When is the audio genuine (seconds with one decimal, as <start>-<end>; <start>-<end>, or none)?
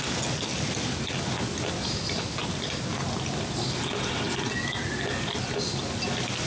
0.0-6.5